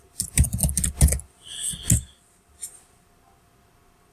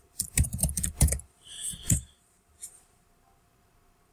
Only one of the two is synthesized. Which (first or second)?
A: second